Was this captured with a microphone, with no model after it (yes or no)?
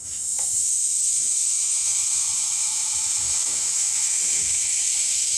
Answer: no